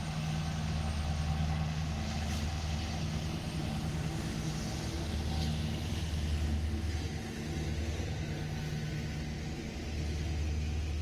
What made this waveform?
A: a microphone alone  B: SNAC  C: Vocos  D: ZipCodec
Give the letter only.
A